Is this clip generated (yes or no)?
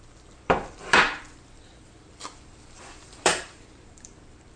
yes